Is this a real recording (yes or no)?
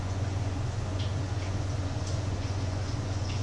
no